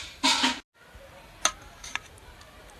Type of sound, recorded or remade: recorded